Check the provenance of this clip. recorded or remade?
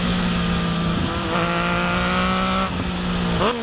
recorded